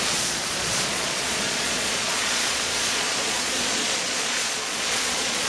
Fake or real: fake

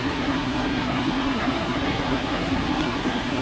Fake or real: fake